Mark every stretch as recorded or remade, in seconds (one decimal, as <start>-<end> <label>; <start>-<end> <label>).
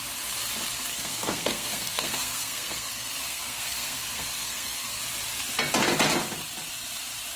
0.0-0.9 recorded; 0.9-5.0 remade; 5.0-7.4 recorded